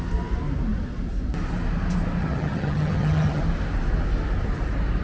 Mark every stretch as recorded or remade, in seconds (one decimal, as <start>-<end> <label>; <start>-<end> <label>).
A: 0.0-2.2 recorded; 2.2-3.4 remade; 3.4-5.0 recorded